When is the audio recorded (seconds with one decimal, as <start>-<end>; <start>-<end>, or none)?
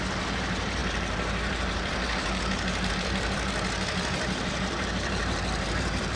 none